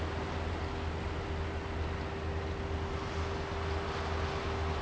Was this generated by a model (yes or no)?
no